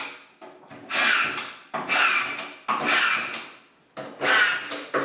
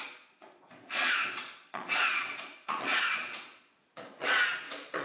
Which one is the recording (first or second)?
first